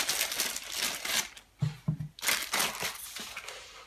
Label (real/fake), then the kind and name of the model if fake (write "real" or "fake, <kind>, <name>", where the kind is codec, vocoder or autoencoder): real